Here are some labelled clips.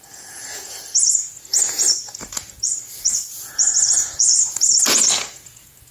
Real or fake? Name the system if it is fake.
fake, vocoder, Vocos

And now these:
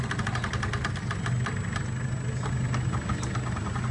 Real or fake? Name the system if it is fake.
real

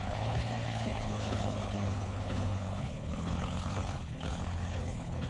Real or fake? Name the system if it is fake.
fake, codec, HILCodec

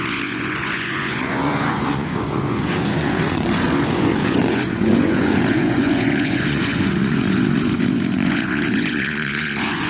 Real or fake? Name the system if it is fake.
fake, vocoder, Vocos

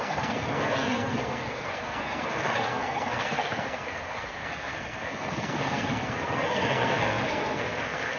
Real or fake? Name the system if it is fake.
fake, codec, SNAC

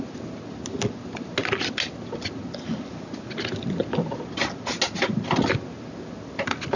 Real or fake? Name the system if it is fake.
real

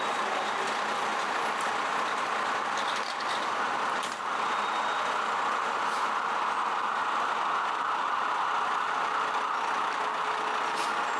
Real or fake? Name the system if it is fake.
real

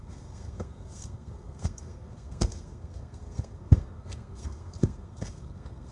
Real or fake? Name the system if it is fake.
fake, codec, SNAC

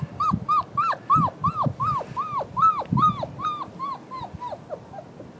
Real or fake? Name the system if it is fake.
real